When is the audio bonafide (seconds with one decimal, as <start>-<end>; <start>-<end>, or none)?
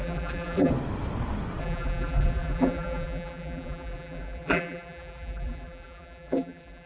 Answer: 0.7-1.6